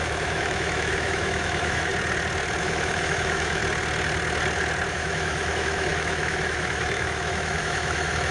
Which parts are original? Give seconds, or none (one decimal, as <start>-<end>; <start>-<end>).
1.9-2.6; 3.6-4.9